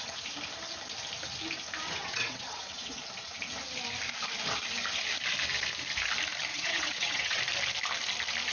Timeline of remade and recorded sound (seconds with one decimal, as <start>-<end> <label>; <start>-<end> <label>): 0.0-2.0 recorded; 2.0-3.0 remade; 3.0-6.5 recorded; 6.5-7.4 remade; 7.4-8.5 recorded